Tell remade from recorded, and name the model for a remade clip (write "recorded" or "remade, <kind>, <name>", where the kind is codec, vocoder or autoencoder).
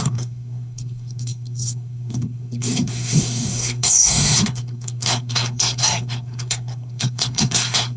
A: remade, codec, SNAC